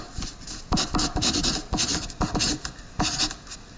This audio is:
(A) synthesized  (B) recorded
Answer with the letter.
B